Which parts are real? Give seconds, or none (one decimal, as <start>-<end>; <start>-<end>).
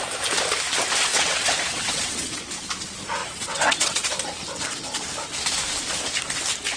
0.0-1.1; 2.4-3.2; 4.1-6.8